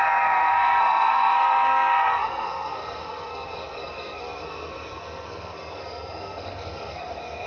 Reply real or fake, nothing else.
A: fake